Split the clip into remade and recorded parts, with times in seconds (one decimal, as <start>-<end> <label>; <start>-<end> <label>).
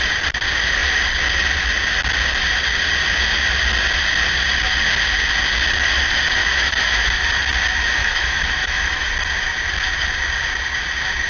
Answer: 0.0-6.4 recorded; 6.4-7.2 remade; 7.2-8.0 recorded; 8.0-9.1 remade; 9.1-11.3 recorded